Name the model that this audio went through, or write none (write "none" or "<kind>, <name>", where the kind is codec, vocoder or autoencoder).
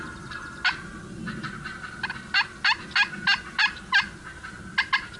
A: none